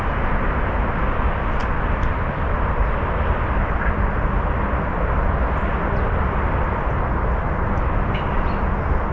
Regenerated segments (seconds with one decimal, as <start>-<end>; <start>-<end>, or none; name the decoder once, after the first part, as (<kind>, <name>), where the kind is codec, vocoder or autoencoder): 1.6-3.2 (vocoder, BigVGAN v2)